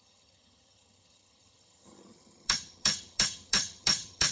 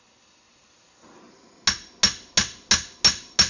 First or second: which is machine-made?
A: first